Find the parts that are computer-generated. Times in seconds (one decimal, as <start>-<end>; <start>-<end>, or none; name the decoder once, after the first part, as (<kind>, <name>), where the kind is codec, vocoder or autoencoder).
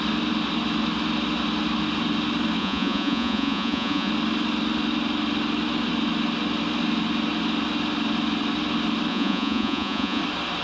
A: 2.6-4.1 (vocoder, Vocos); 9.1-10.2